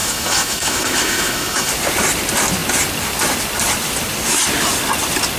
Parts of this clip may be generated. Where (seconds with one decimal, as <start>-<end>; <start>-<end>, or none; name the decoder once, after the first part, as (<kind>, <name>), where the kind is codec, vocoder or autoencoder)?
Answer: 0.0-1.7 (autoencoder, DAC-VAE)